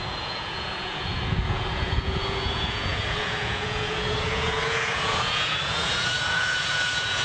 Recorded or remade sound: remade